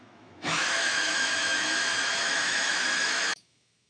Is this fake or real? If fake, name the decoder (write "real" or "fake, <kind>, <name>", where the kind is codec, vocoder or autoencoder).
fake, autoencoder, DAC-VAE